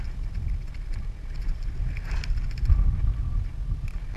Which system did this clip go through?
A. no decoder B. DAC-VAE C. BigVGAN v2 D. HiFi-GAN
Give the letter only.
A